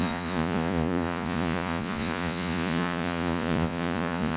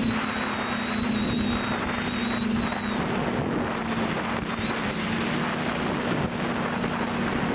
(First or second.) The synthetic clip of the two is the first